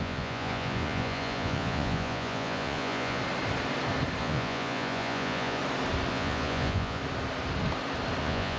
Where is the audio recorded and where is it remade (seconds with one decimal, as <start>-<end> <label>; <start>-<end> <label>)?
0.0-3.2 remade; 3.2-4.2 recorded; 4.2-5.6 remade; 5.6-6.1 recorded; 6.1-7.0 remade; 7.0-8.2 recorded; 8.2-8.6 remade